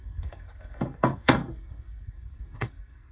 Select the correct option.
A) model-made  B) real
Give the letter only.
A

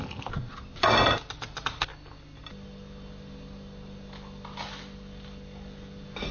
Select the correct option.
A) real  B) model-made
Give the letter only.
A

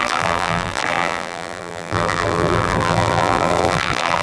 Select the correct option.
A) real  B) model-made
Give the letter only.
B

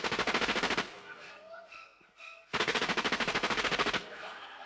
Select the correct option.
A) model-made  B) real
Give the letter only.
A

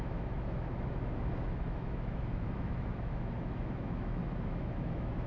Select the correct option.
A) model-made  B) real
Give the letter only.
A